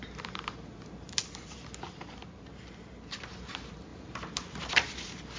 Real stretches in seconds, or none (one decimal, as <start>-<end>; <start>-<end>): 0.0-5.4